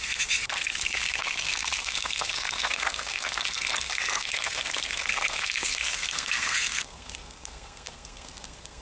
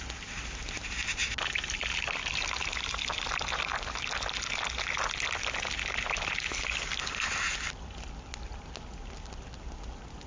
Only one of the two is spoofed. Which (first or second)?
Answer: first